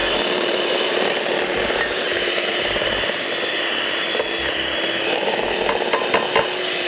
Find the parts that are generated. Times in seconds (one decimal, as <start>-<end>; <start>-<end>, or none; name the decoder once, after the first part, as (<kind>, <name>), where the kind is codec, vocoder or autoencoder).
0.0-3.3 (vocoder, BigVGAN v2)

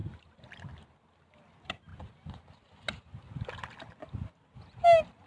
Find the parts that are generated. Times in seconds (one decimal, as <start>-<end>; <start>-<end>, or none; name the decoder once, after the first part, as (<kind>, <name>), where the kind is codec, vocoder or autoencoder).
none

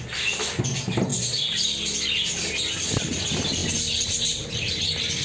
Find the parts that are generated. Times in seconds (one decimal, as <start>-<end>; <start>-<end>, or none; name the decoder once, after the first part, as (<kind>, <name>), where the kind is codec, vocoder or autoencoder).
none

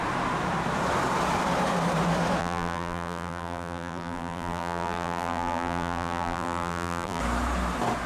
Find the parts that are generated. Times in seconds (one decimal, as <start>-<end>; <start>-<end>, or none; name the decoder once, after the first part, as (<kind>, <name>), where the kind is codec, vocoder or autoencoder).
2.4-7.2 (vocoder, BigVGAN v2)

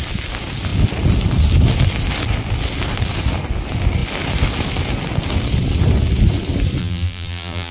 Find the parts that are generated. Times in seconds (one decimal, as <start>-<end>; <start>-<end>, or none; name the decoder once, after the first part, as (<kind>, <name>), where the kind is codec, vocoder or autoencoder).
6.8-7.7 (vocoder, BigVGAN v2)

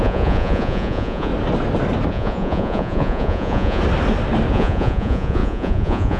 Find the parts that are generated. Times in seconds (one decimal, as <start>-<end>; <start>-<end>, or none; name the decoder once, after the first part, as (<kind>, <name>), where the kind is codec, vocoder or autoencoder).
0.0-1.3 (vocoder, Vocos); 2.1-3.8; 4.5-6.2

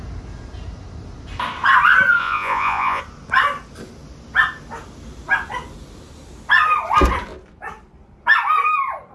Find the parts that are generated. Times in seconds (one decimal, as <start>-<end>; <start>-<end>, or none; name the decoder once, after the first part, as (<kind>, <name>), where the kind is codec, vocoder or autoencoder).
2.2-3.0 (vocoder, Vocos)